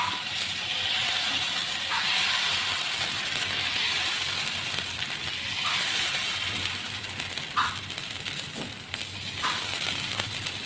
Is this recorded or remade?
remade